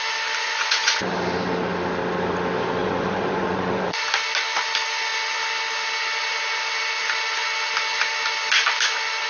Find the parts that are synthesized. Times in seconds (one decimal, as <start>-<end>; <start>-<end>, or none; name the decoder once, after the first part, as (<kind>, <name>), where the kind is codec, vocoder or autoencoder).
0.4-1.1 (vocoder, Vocos); 2.8-4.0